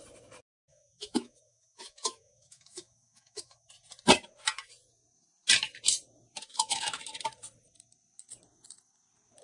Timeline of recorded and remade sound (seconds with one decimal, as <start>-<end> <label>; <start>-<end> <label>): 0.0-0.7 recorded; 0.7-3.7 remade; 3.7-6.5 recorded; 6.5-7.0 remade; 7.0-9.4 recorded